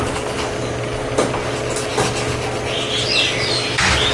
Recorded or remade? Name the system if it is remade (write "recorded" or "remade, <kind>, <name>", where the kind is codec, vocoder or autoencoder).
recorded